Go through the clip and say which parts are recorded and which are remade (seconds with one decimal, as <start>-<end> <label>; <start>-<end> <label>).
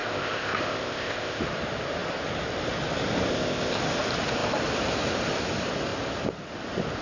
0.0-1.4 remade; 1.4-3.3 recorded; 3.3-3.8 remade; 3.8-7.0 recorded